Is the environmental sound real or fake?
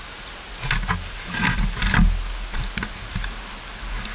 real